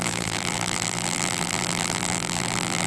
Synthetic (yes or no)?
yes